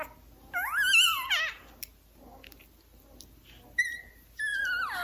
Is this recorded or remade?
recorded